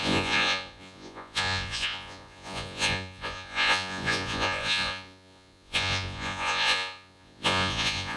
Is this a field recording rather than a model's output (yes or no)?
no